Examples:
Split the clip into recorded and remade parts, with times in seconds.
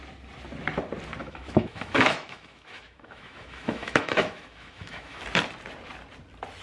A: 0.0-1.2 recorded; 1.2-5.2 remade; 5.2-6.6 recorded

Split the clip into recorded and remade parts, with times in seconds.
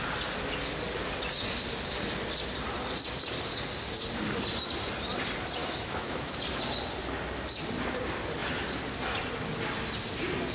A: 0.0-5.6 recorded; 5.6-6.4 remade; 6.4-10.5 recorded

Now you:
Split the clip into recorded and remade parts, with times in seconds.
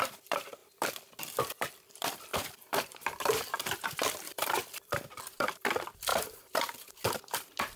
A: 0.0-7.8 remade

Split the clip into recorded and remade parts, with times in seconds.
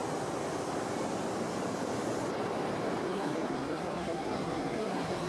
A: 0.0-3.0 recorded; 3.0-5.3 remade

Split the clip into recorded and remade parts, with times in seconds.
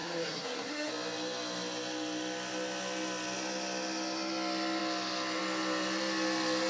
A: 0.0-0.9 remade; 0.9-6.7 recorded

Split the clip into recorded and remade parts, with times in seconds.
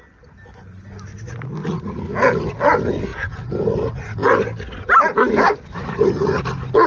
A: 0.0-3.1 recorded; 3.1-3.7 remade; 3.7-6.9 recorded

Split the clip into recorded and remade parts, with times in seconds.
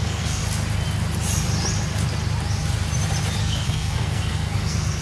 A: 0.0-0.4 remade; 0.4-3.4 recorded; 3.4-5.0 remade